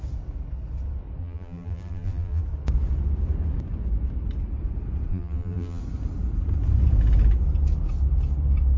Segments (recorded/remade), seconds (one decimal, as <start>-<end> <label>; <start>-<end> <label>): 0.0-1.2 recorded; 1.2-2.4 remade; 2.4-5.1 recorded; 5.1-5.8 remade; 5.8-8.8 recorded